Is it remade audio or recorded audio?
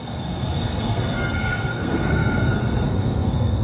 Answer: remade